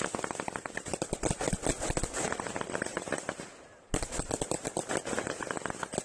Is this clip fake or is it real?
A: real